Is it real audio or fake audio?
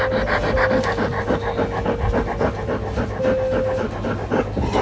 real